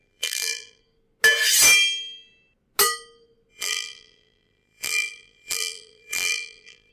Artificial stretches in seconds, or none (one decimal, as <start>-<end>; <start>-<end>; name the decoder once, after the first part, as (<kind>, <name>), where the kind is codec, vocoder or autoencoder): 0.0-0.8 (vocoder, BigVGAN v2); 3.5-6.9